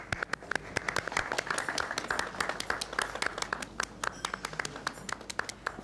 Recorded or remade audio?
recorded